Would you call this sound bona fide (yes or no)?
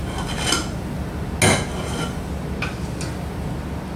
yes